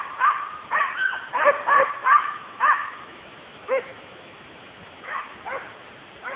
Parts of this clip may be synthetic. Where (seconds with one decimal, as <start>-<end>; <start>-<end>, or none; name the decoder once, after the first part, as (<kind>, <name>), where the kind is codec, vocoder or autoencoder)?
2.0-5.2 (autoencoder, DAC-VAE)